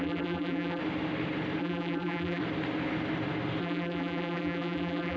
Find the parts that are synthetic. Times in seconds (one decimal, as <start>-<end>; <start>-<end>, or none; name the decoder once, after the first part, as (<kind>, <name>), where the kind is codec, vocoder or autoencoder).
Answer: 0.0-0.8 (vocoder, BigVGAN v2); 1.6-2.4; 3.6-5.2